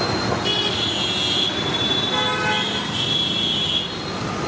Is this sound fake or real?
real